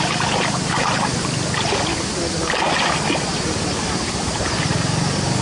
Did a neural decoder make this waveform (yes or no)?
no